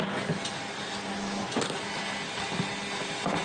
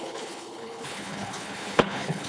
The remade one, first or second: second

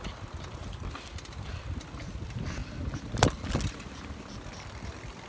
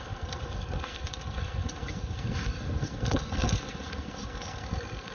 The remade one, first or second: second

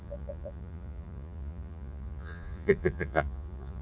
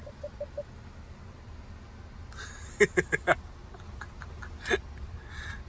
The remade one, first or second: first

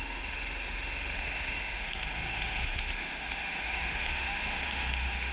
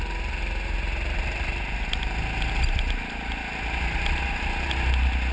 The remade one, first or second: first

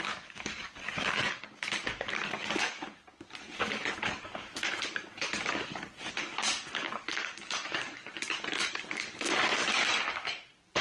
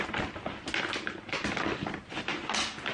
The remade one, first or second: first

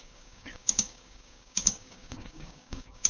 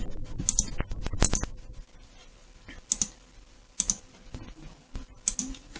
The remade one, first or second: first